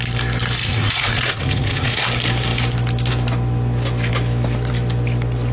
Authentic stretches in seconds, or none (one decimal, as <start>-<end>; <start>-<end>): 0.0-0.6; 2.0-5.5